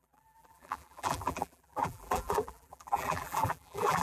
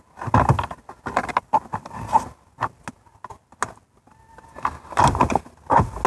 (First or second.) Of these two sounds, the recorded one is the second